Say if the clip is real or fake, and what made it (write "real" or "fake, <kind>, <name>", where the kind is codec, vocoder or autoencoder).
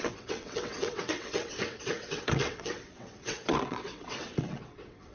fake, vocoder, WaveNeXt